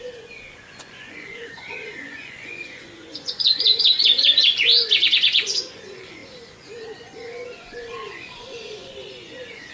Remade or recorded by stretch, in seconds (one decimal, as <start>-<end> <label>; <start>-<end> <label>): 0.0-9.7 remade